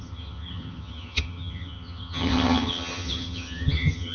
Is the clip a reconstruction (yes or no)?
yes